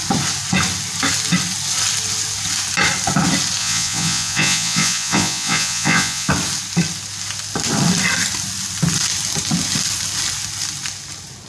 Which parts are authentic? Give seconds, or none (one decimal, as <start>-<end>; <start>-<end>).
0.0-3.6; 6.3-11.5